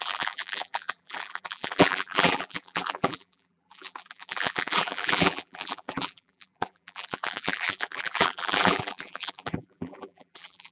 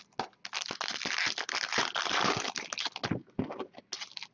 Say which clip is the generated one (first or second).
first